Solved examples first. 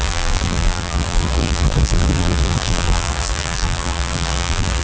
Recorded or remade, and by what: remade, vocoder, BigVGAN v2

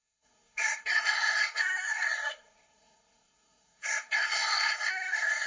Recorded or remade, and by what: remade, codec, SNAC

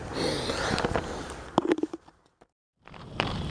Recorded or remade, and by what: recorded